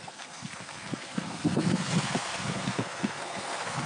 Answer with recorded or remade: remade